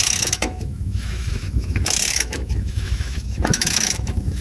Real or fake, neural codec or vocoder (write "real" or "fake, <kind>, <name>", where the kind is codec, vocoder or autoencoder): fake, autoencoder, DAC-VAE